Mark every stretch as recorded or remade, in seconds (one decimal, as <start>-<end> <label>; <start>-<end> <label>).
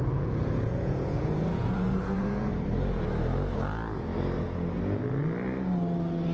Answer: 0.0-2.5 remade; 2.5-6.3 recorded